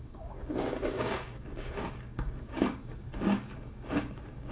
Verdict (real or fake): fake